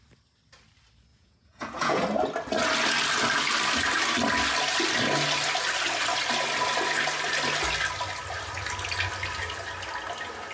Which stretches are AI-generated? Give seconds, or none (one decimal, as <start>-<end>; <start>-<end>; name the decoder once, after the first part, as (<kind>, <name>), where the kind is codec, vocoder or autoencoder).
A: 1.1-2.0 (vocoder, Vocos)